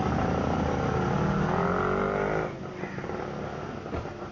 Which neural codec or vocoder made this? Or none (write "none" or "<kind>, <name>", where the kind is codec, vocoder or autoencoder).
none